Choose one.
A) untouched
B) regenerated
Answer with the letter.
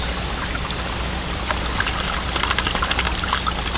A